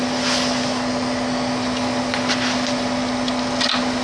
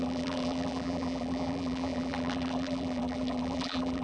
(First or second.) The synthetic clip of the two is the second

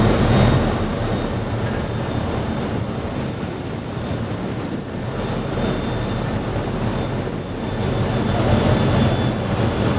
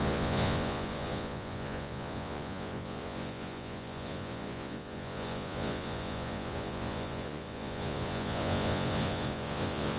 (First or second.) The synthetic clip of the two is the second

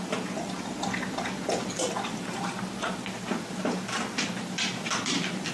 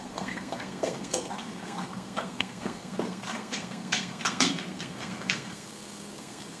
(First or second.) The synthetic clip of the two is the second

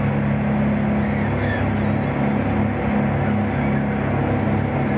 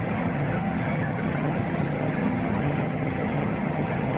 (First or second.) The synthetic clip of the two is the second